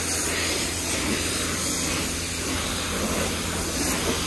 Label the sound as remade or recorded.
recorded